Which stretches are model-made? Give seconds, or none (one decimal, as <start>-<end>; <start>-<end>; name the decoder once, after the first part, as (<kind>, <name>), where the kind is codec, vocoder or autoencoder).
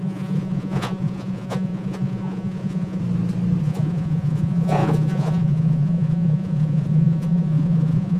0.0-3.0 (vocoder, Vocos); 3.6-8.2